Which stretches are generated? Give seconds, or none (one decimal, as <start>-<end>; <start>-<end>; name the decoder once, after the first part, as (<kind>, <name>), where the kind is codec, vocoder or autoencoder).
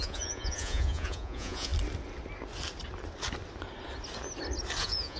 0.0-1.7 (vocoder, Vocos); 4.8-5.2